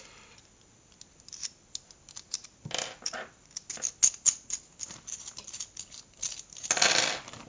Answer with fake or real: real